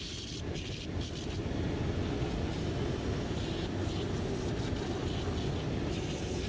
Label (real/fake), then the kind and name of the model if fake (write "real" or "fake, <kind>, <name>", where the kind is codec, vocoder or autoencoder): real